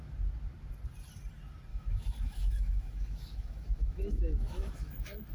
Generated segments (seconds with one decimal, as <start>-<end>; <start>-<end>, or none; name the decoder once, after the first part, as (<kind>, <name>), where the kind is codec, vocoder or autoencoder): 1.7-5.3 (autoencoder, DAC-VAE)